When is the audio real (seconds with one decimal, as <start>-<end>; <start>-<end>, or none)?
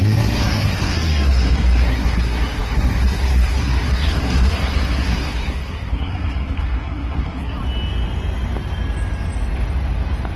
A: 7.6-10.4